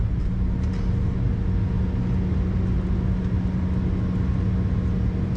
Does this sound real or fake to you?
real